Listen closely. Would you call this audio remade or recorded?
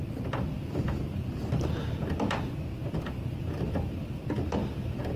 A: recorded